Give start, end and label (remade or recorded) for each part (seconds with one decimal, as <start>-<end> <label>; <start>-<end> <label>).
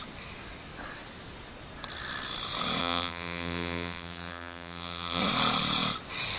0.0-2.8 recorded; 2.8-5.2 remade; 5.2-6.4 recorded